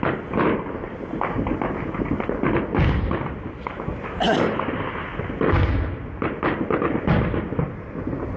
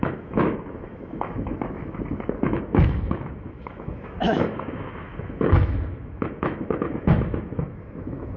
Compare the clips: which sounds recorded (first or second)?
first